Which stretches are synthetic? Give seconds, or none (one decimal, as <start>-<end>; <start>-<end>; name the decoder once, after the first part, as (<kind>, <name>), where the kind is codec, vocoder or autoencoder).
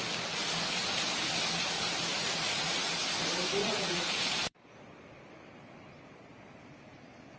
2.1-2.9 (vocoder, Vocos); 3.6-4.2